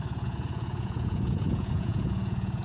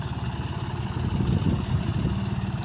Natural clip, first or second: second